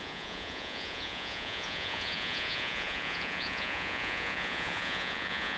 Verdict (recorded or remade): remade